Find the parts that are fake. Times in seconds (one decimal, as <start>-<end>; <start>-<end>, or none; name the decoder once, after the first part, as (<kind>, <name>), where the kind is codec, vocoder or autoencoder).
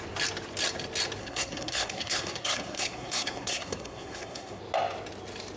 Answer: 1.2-4.6 (codec, SNAC)